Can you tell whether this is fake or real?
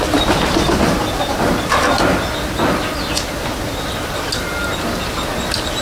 real